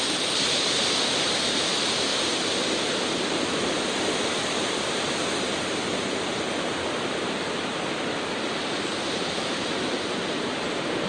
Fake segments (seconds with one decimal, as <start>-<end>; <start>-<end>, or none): 0.0-2.1; 7.1-11.1